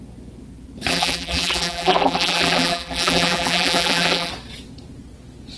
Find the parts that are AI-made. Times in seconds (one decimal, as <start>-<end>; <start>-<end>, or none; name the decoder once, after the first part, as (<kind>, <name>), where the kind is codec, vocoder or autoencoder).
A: 0.9-4.3 (vocoder, BigVGAN v2)